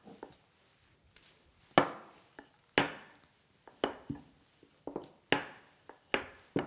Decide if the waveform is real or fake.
real